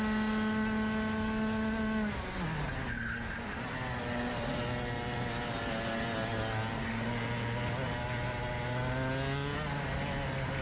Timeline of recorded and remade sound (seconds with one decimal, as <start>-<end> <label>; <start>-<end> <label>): 0.0-10.6 recorded